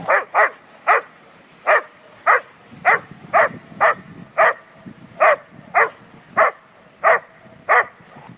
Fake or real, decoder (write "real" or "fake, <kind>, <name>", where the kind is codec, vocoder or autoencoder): real